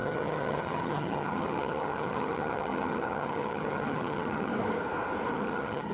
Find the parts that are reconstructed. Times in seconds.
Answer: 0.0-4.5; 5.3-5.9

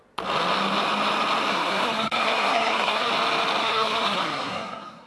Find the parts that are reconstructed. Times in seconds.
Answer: 1.5-3.1; 3.6-5.1

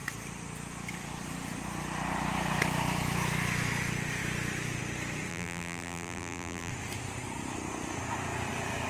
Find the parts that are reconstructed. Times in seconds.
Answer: 5.3-6.7